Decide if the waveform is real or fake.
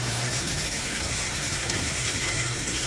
fake